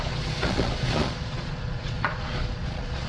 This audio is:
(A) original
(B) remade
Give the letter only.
B